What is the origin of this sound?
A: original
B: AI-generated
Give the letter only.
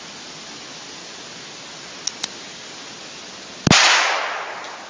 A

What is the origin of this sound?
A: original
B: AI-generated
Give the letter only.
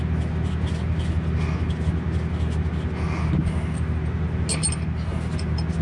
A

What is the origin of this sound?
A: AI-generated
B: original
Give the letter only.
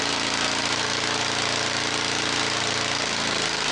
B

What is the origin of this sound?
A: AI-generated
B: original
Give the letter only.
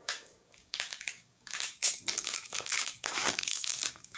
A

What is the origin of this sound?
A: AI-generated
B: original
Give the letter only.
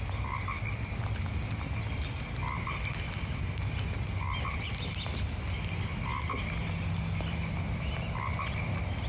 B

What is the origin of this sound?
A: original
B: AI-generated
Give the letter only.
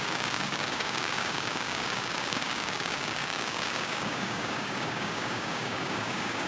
B